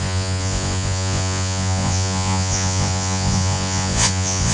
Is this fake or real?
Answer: fake